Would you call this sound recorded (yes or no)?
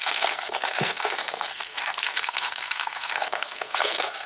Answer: no